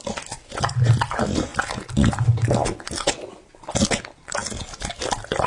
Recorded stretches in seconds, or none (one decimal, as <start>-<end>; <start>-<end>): 0.0-5.5